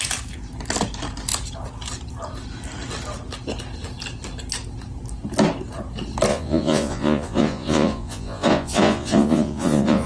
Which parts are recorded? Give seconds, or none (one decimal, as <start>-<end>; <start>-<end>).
0.0-6.3